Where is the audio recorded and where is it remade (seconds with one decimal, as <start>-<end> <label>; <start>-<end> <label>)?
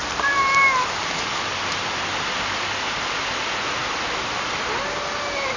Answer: 0.0-5.6 recorded